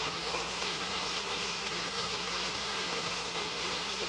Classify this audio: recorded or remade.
remade